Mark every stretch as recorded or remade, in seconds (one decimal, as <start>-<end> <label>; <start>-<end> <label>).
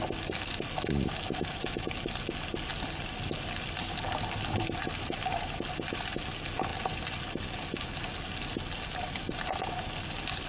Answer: 0.0-10.5 recorded